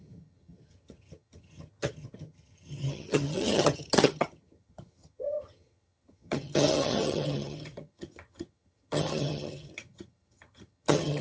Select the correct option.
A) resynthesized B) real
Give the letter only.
A